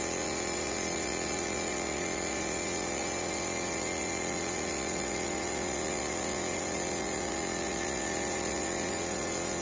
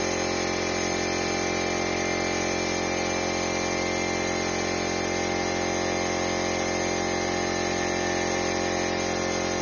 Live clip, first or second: second